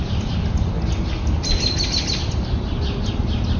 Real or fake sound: real